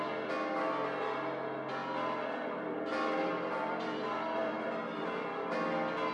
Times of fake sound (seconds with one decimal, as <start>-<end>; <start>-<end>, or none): 1.8-5.5